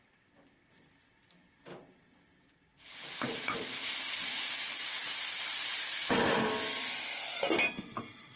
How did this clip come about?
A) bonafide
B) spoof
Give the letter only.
A